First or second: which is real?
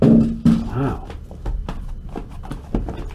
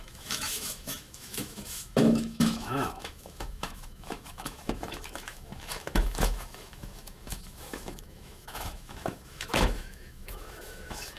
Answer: first